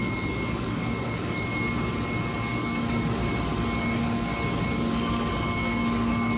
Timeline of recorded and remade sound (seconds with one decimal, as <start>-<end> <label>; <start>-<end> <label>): 0.0-1.5 remade; 1.5-2.4 recorded; 2.4-3.2 remade; 3.2-3.8 recorded; 3.8-4.3 remade; 4.3-4.9 recorded; 4.9-6.4 remade

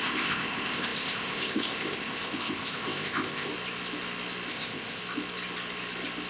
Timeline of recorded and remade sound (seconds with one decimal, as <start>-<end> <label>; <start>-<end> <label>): 0.0-3.5 remade; 3.5-4.5 recorded; 4.5-5.0 remade; 5.0-6.3 recorded

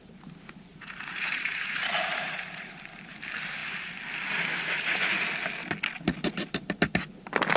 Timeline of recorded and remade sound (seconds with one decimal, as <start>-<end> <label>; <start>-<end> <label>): 0.0-0.7 recorded; 0.7-2.8 remade; 2.8-7.6 recorded

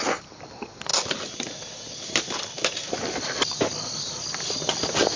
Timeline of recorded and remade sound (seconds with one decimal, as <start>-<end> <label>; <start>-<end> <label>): 0.0-5.2 recorded

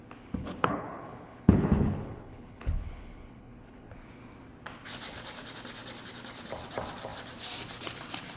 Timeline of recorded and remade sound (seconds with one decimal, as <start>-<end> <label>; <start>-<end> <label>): 0.0-0.4 recorded; 0.4-3.9 remade; 3.9-8.4 recorded

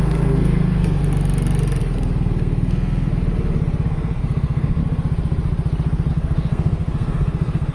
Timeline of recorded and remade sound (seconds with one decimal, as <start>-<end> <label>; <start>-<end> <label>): 0.0-1.0 remade; 1.0-1.8 recorded; 1.8-3.1 remade; 3.1-3.9 recorded; 3.9-4.8 remade; 4.8-6.1 recorded; 6.1-7.7 remade